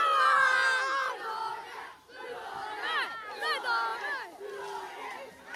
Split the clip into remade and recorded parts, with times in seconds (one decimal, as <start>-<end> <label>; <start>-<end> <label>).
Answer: 0.0-1.5 recorded; 1.5-2.4 remade; 2.4-5.6 recorded